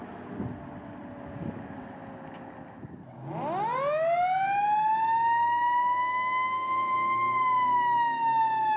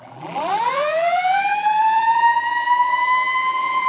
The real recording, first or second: first